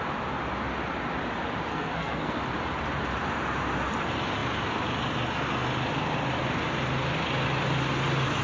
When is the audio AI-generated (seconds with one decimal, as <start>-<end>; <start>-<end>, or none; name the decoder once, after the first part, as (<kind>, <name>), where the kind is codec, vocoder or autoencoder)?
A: 1.7-2.4 (codec, SNAC)